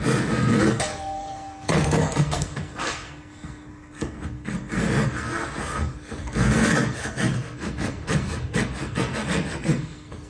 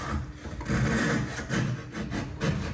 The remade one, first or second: first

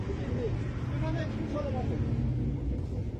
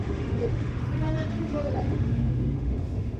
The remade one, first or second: second